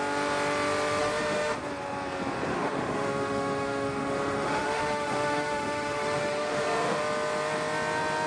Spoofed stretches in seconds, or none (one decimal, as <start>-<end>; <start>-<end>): 1.0-1.6; 2.5-7.0